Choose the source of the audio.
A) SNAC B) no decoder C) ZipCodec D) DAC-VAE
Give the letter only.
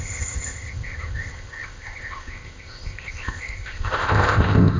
C